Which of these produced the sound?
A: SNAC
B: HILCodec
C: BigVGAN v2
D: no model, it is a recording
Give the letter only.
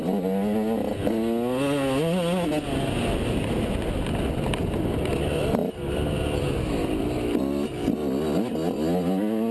D